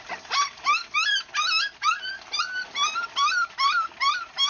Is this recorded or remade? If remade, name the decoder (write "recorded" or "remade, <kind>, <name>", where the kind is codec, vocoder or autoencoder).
recorded